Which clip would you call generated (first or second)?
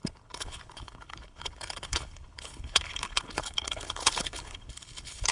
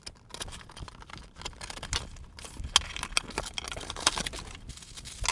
first